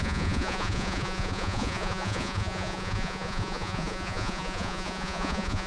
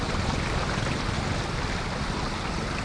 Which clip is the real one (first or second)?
second